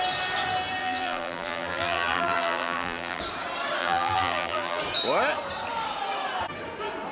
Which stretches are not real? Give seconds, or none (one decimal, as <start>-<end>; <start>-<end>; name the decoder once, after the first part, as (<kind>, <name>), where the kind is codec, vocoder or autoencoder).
0.8-3.2 (vocoder, BigVGAN v2); 3.8-4.8